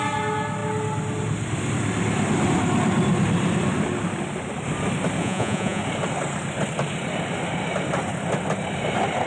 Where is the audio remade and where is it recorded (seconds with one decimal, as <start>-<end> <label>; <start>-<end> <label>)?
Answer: 0.0-5.2 recorded; 5.2-5.8 remade; 5.8-9.3 recorded